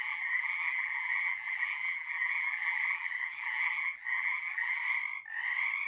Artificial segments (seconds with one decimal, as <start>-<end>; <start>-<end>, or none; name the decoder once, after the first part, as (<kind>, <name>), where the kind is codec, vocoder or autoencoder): 0.0-4.8 (vocoder, BigVGAN v2)